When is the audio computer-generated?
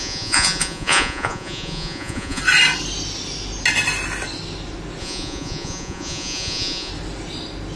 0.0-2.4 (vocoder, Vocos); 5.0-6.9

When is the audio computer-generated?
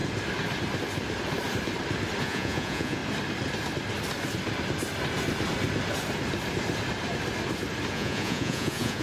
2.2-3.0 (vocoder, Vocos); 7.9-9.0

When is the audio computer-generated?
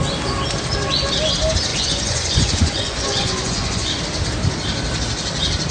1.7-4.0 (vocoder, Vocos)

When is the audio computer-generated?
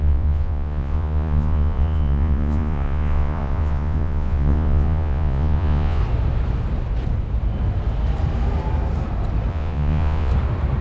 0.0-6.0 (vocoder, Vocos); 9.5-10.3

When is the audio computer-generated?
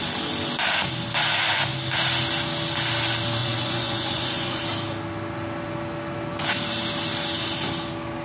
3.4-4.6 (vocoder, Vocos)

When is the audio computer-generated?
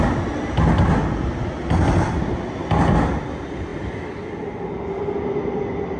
none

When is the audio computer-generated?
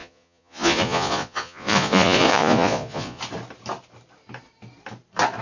0.0-3.2 (vocoder, Vocos)